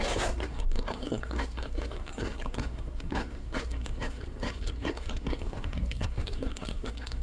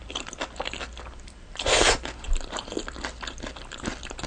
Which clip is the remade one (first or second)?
first